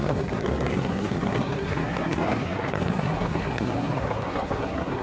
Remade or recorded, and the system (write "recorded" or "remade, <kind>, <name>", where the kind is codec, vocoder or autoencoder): remade, codec, SNAC